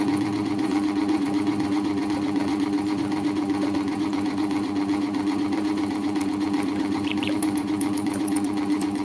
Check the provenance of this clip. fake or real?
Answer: fake